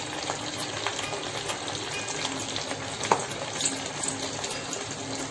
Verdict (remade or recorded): recorded